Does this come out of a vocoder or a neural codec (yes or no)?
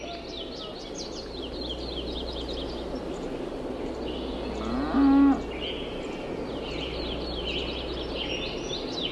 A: no